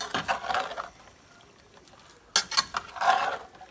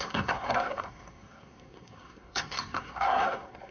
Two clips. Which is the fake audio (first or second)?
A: second